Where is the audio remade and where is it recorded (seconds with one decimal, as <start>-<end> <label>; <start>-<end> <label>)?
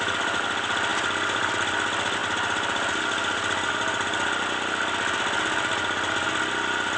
0.0-7.0 recorded